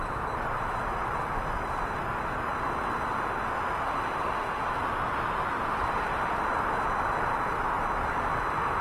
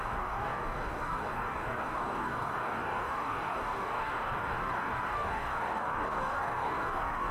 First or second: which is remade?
second